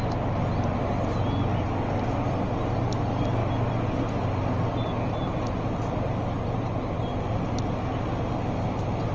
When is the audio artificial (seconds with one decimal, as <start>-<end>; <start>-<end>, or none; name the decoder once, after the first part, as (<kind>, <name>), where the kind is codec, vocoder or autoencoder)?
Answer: none

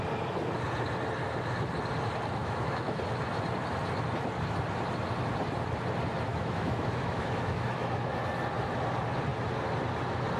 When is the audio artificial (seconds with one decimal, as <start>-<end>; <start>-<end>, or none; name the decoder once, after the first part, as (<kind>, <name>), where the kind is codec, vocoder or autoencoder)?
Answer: 2.4-3.0 (autoencoder, DAC-VAE); 6.3-8.1

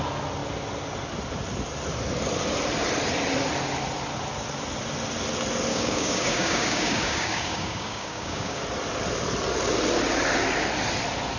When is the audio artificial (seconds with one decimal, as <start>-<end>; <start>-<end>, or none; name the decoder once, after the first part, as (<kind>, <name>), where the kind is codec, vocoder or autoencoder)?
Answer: 5.7-8.6 (codec, DAC)